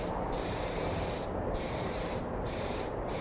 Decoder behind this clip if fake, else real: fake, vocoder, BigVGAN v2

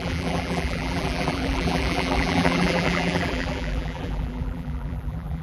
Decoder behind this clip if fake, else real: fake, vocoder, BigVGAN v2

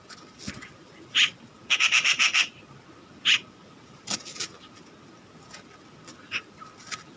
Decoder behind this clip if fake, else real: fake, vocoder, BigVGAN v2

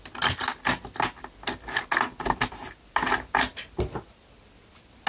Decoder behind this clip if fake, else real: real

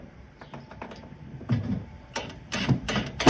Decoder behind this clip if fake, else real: fake, vocoder, BigVGAN v2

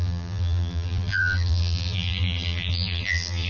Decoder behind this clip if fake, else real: fake, vocoder, BigVGAN v2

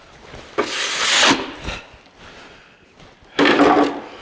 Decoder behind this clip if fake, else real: real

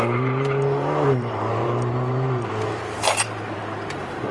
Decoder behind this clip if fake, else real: fake, vocoder, BigVGAN v2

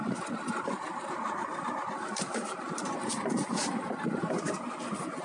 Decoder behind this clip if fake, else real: fake, vocoder, BigVGAN v2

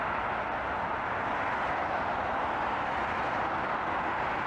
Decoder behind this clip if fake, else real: fake, vocoder, BigVGAN v2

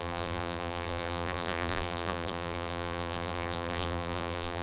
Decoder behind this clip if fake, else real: fake, vocoder, BigVGAN v2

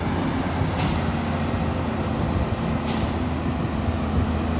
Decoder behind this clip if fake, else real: real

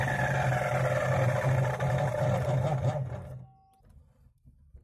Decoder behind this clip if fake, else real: real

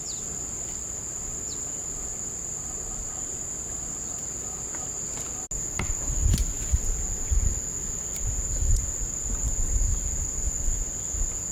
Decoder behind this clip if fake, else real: real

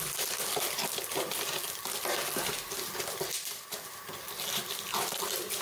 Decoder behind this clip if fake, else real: real